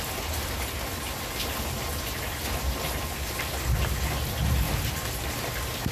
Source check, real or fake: real